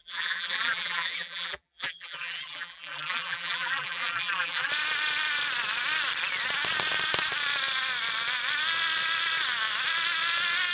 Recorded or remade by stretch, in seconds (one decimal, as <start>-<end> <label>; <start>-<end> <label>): 0.0-4.7 remade; 4.7-10.7 recorded